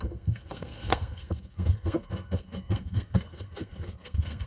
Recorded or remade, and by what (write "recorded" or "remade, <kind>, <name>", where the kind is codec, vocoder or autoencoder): remade, codec, SNAC